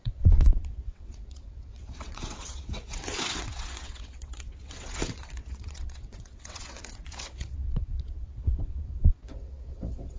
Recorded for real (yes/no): no